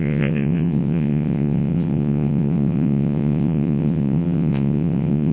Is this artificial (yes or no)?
yes